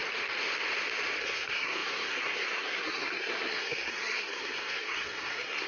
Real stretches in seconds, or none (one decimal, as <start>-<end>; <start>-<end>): 0.0-1.2